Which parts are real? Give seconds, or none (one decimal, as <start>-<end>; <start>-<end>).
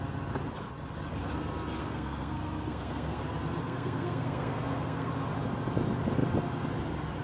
0.0-1.8; 3.2-3.6; 5.1-7.2